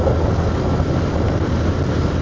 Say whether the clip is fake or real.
real